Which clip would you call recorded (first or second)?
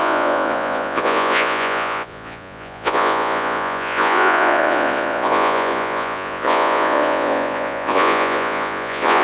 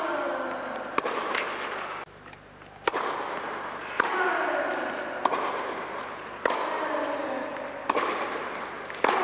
second